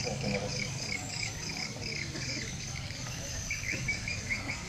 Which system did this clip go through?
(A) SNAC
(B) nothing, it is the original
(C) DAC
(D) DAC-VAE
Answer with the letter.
C